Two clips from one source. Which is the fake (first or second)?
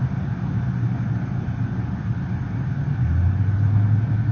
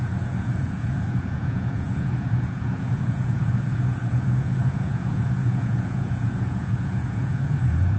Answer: second